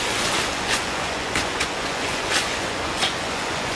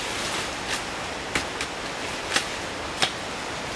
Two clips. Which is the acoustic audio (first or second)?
second